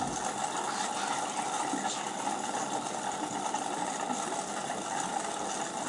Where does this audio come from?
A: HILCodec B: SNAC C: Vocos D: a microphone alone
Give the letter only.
D